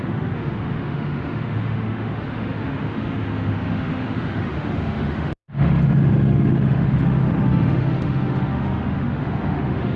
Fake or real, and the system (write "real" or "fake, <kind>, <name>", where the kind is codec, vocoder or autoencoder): fake, autoencoder, DAC-VAE